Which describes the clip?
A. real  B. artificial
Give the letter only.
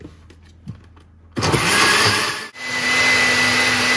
A